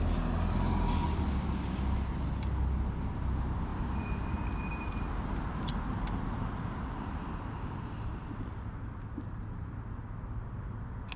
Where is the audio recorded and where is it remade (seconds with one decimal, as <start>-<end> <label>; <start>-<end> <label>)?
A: 0.0-11.2 recorded